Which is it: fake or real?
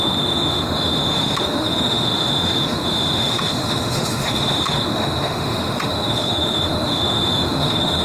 fake